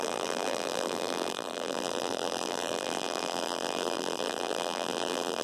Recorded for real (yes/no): no